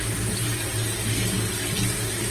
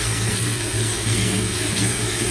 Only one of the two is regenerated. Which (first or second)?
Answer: second